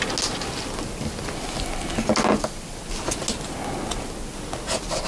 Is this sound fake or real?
real